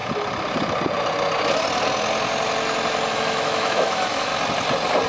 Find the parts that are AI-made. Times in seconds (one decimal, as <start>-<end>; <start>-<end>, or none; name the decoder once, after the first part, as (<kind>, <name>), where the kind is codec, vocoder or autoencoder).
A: 3.1-4.3 (autoencoder, DAC-VAE)